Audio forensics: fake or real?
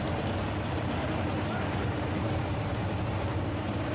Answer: fake